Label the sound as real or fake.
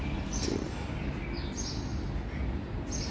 real